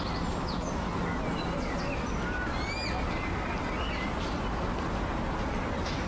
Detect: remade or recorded recorded